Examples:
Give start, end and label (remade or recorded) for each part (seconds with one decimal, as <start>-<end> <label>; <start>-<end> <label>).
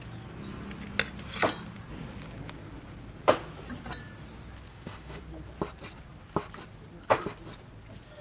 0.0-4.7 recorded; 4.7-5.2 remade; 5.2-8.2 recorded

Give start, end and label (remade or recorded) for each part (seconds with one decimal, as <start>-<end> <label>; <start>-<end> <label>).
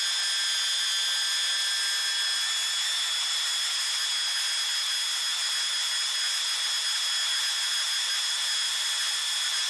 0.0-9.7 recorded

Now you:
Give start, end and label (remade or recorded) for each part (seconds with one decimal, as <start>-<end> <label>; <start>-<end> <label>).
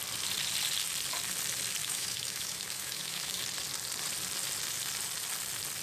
0.0-1.8 recorded; 1.8-3.4 remade; 3.4-5.8 recorded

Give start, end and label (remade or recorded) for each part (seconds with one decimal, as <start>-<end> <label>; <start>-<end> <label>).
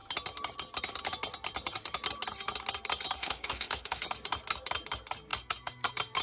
0.0-3.2 recorded; 3.2-4.0 remade; 4.0-6.2 recorded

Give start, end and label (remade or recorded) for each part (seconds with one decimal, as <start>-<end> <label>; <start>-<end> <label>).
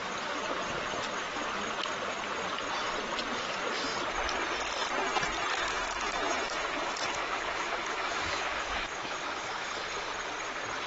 0.0-5.5 recorded; 5.5-9.7 remade; 9.7-10.9 recorded